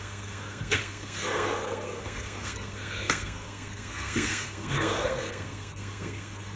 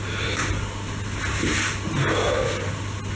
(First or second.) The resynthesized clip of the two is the first